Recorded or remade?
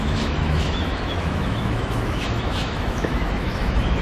remade